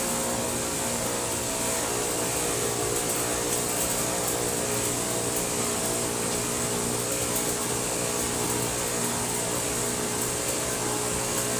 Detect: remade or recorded recorded